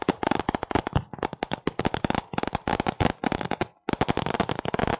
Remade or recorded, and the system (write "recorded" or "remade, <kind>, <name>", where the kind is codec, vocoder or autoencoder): recorded